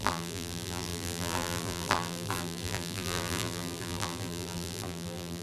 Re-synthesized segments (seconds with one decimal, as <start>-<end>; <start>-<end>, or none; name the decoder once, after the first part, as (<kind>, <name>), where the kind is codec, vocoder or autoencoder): 0.0-5.4 (vocoder, BigVGAN v2)